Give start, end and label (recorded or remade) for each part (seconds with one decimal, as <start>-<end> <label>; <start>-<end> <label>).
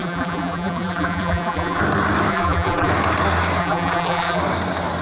0.0-1.8 remade; 1.8-2.3 recorded; 2.3-2.9 remade; 2.9-3.6 recorded; 3.6-4.4 remade; 4.4-5.0 recorded